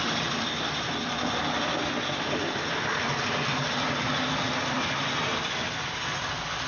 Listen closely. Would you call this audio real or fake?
real